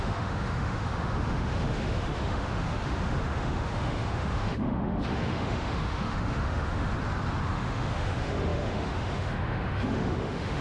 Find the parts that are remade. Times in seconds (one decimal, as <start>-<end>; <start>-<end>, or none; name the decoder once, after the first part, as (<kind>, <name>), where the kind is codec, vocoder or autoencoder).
0.0-6.9 (autoencoder, DAC-VAE); 7.5-10.6